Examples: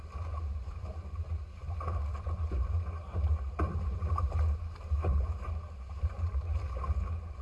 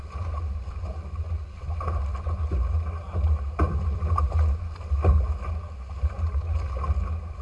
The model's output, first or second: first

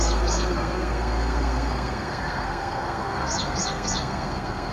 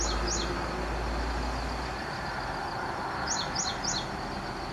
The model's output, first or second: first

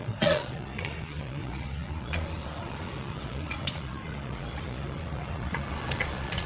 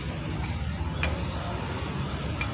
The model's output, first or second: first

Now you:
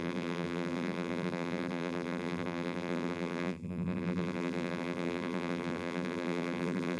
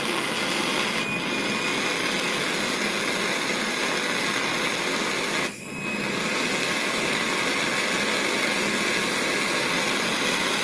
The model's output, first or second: first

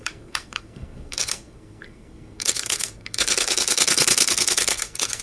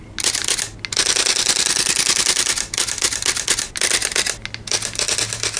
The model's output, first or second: first